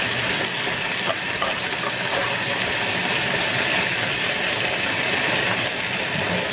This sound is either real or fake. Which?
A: real